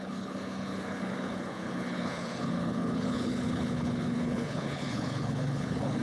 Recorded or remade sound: remade